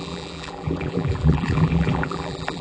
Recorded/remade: remade